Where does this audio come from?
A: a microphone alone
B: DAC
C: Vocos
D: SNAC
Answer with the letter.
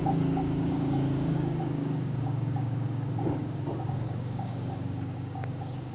B